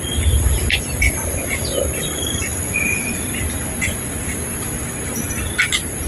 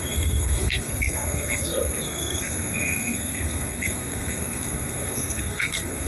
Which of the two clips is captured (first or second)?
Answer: first